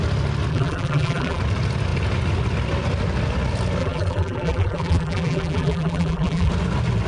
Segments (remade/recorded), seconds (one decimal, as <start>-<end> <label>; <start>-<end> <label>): 0.0-0.5 recorded; 0.5-1.4 remade; 1.4-3.8 recorded; 3.8-6.5 remade; 6.5-7.1 recorded